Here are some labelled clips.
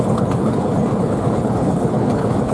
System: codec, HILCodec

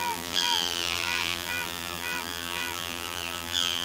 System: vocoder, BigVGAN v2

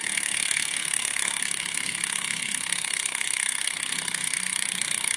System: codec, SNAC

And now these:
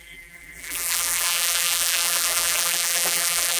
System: vocoder, BigVGAN v2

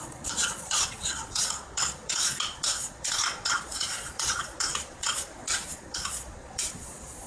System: vocoder, Vocos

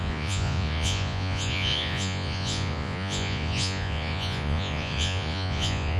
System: vocoder, Vocos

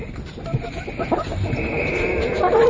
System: none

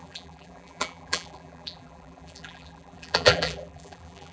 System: vocoder, BigVGAN v2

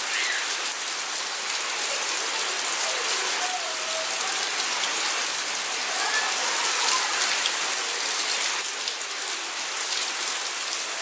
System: none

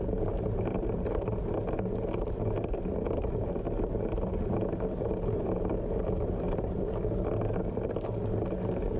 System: none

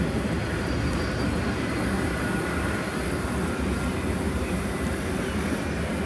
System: none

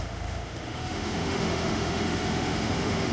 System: autoencoder, DAC-VAE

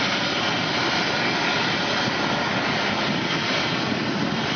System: none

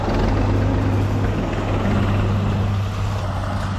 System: none